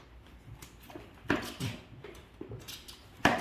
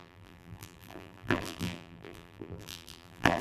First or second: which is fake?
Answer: second